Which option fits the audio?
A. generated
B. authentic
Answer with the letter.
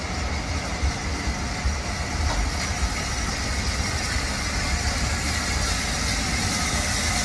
B